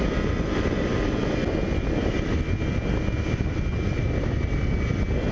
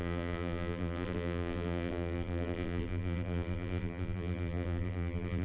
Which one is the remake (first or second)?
second